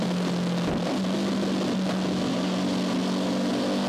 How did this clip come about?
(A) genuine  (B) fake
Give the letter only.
A